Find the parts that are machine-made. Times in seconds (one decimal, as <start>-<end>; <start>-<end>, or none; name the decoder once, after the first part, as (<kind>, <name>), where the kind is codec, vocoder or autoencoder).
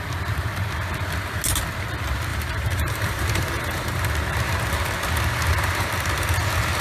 2.3-4.1 (vocoder, BigVGAN v2)